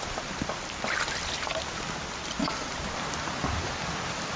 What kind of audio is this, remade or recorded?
recorded